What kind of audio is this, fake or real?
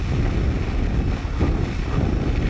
real